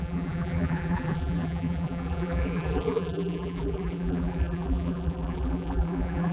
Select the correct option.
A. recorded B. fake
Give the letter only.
B